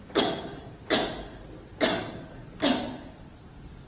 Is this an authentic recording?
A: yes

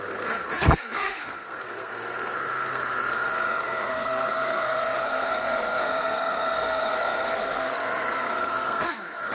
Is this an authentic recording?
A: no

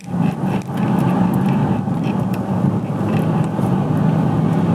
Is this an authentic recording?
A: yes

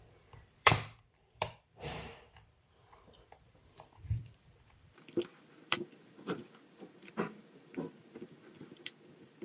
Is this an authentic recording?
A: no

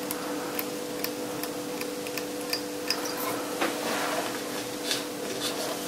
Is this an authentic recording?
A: yes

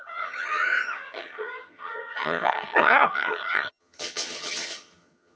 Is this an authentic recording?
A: no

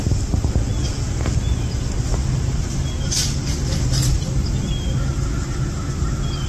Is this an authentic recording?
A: yes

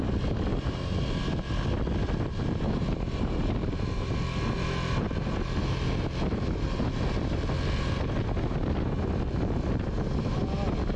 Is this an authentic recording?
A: yes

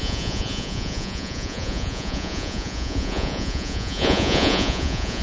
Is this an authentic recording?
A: no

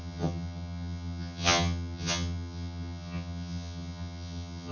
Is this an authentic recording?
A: no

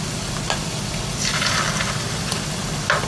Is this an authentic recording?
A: yes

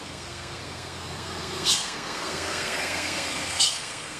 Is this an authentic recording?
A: no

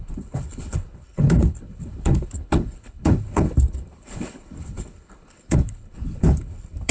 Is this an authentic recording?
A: no